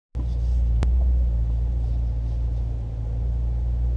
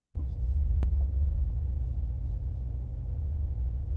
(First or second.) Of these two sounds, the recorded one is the first